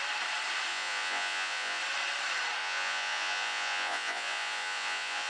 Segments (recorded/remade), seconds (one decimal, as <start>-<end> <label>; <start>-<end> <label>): 0.0-0.7 recorded; 0.7-1.8 remade; 1.8-2.6 recorded; 2.6-5.3 remade